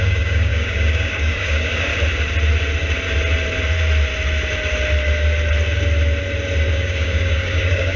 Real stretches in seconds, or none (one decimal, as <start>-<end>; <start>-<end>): 1.9-6.7